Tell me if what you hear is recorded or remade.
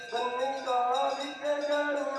recorded